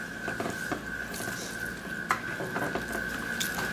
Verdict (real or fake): real